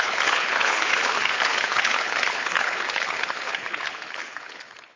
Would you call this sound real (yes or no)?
no